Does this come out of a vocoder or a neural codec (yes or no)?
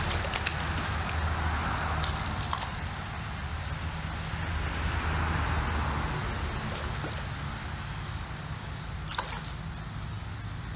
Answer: no